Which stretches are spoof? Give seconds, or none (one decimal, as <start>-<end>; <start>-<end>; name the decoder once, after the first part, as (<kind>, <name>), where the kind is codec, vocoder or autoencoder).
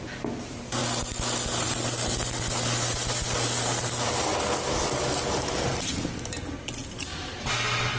none